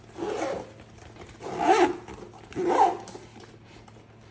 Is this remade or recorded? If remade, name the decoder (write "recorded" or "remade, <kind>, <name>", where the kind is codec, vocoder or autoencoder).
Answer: recorded